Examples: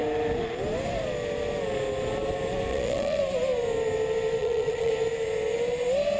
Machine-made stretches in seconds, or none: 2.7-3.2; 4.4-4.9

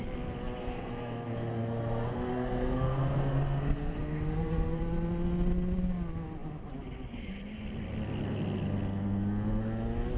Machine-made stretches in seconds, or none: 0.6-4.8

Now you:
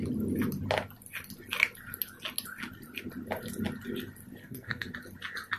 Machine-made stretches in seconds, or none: 4.4-4.9

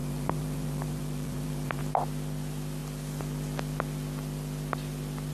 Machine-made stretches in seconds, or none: 0.0-1.8